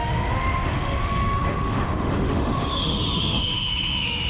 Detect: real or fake fake